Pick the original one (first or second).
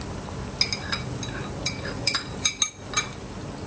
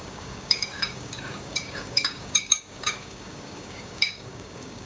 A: first